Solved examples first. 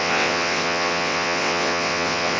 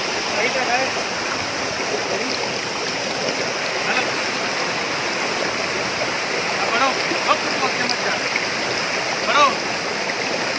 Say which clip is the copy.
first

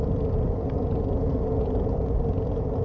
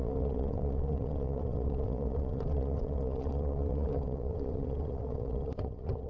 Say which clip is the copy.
second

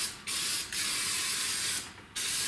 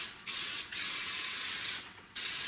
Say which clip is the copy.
second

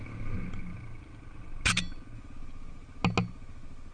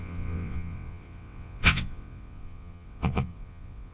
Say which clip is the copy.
second